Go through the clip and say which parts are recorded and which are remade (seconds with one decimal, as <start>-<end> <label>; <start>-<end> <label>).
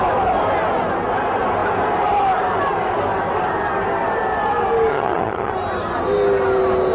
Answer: 0.0-4.9 recorded; 4.9-5.5 remade; 5.5-6.9 recorded